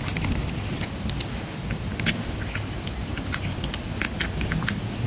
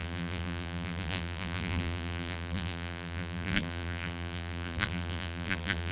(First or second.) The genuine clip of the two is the first